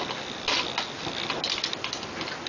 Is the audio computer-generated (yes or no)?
no